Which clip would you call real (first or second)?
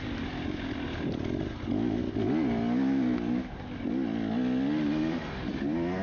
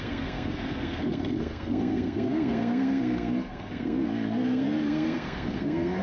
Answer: first